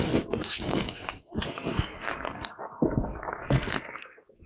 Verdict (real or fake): fake